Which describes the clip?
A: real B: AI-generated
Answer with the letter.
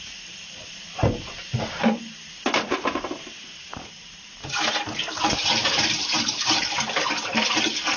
B